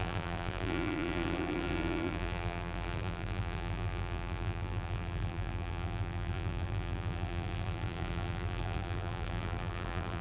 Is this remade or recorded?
remade